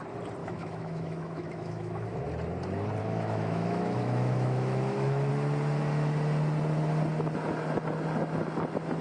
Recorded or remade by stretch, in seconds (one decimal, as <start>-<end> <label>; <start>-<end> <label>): 0.0-0.4 recorded; 0.4-2.3 remade; 2.3-3.0 recorded; 3.0-5.3 remade; 5.3-9.0 recorded